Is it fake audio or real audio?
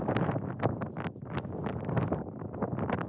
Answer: real